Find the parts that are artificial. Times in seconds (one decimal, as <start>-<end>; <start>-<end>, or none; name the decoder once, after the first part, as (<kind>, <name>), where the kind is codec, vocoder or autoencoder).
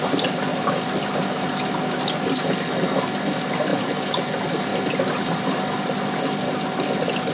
3.7-4.3 (vocoder, BigVGAN v2)